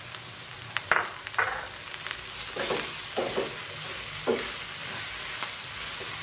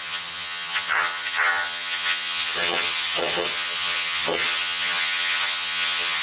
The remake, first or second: second